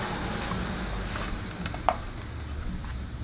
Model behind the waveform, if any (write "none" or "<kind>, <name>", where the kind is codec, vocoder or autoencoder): none